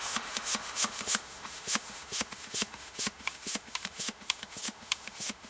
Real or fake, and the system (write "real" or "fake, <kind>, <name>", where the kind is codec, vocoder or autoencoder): fake, autoencoder, DAC-VAE